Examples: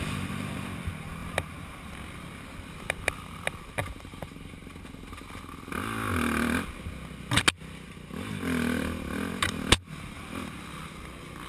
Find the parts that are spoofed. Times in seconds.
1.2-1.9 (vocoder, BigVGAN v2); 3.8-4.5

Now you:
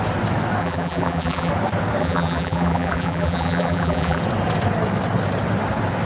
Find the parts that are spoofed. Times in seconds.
0.6-1.5 (vocoder, BigVGAN v2); 2.0-4.2